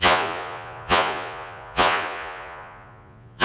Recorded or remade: remade